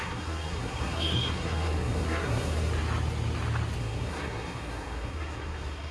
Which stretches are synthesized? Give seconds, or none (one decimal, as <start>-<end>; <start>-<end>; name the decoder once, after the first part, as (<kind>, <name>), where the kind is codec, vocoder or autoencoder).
0.0-2.7 (codec, SNAC); 3.8-5.9